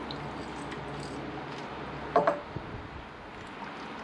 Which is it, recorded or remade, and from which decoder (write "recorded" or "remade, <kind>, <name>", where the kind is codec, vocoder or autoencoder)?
recorded